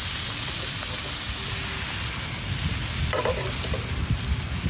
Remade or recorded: recorded